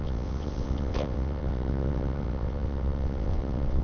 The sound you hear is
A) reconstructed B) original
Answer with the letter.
A